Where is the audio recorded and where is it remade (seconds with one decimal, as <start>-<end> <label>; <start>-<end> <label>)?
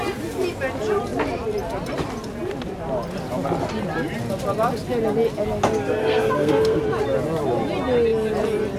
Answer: 0.0-6.0 recorded; 6.0-6.8 remade; 6.8-8.8 recorded